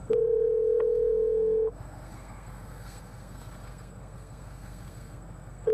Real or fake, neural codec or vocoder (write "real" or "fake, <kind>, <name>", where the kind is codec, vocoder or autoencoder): fake, codec, SNAC